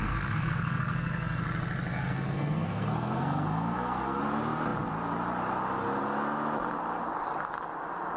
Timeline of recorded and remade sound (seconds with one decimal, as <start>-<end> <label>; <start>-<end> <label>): 0.0-1.4 remade; 1.4-1.9 recorded; 1.9-4.2 remade; 4.2-8.2 recorded